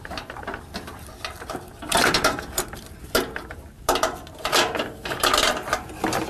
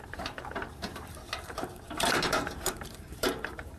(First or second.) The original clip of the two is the first